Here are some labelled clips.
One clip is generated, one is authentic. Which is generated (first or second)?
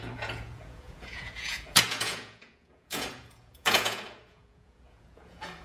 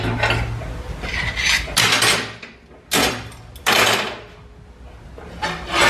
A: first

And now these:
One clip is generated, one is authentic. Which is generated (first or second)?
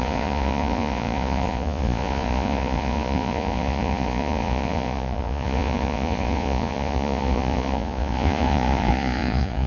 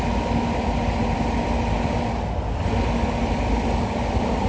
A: first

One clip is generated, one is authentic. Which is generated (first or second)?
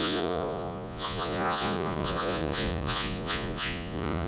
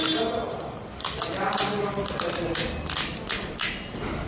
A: first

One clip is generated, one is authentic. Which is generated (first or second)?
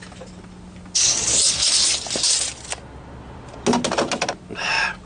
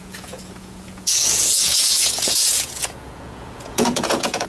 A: second